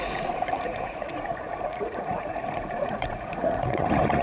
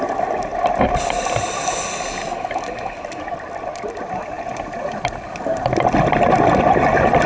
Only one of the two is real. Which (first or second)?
second